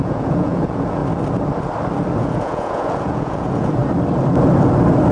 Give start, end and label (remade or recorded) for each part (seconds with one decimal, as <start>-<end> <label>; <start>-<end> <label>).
0.0-1.0 remade; 1.0-2.2 recorded; 2.2-3.8 remade; 3.8-5.1 recorded